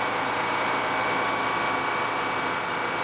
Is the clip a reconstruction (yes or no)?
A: no